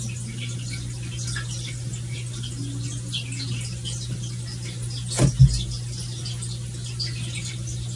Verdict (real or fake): real